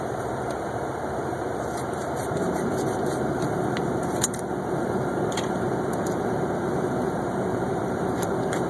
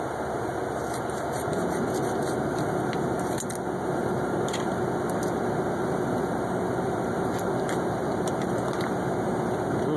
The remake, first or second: first